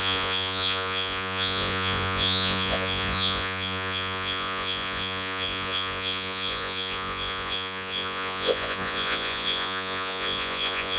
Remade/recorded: remade